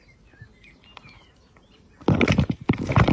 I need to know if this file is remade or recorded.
recorded